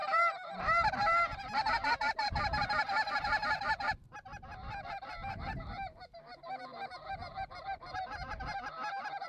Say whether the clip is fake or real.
fake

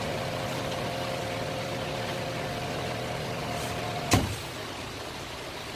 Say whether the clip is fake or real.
fake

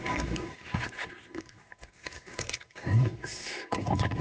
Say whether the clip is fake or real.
fake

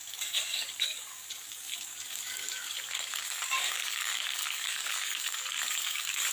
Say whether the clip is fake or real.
fake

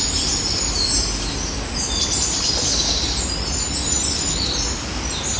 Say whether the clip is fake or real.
real